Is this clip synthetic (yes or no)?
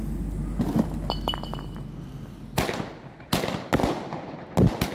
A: no